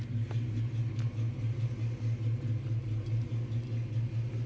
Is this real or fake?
real